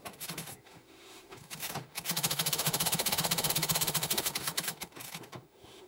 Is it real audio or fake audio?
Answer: fake